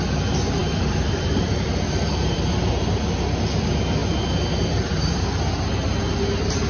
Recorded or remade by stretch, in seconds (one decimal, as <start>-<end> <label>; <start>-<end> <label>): 0.0-0.6 recorded; 0.6-2.7 remade; 2.7-4.0 recorded; 4.0-5.2 remade; 5.2-6.7 recorded